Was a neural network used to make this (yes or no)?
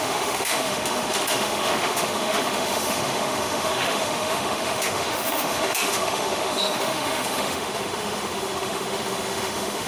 yes